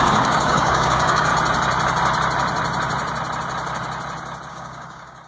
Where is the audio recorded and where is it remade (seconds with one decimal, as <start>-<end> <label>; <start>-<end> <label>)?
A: 0.0-1.3 remade; 1.3-4.5 recorded; 4.5-5.3 remade